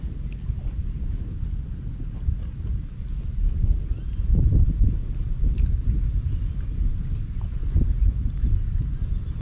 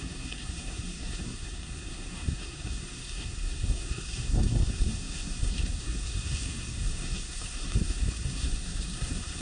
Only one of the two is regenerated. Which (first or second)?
second